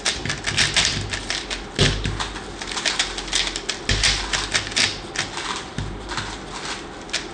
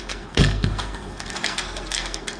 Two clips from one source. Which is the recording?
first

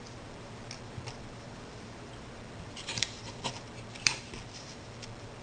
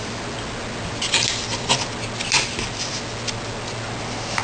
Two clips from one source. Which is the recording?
second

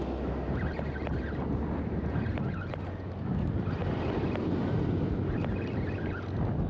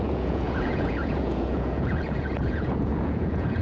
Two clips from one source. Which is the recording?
first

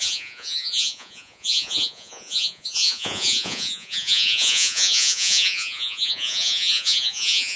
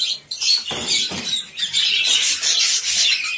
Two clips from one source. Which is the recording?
second